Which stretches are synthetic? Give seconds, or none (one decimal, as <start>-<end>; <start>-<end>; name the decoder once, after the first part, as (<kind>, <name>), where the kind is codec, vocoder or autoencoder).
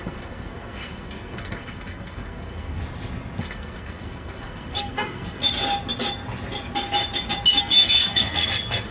0.0-2.8 (codec, SNAC); 3.4-5.4; 7.6-8.9